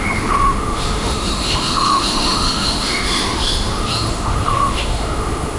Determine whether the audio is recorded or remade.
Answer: remade